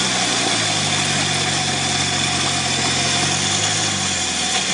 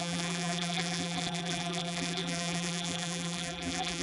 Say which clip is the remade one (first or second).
second